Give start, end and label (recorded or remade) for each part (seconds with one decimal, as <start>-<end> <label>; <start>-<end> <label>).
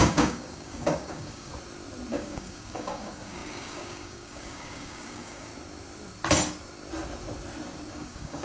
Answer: 0.0-1.5 remade; 1.5-2.1 recorded; 2.1-5.5 remade; 5.5-7.9 recorded; 7.9-8.4 remade